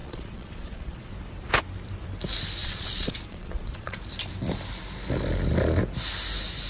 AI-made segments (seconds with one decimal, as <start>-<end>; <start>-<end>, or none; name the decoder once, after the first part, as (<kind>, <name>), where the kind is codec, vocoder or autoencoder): 0.0-1.1 (vocoder, Vocos); 2.6-4.0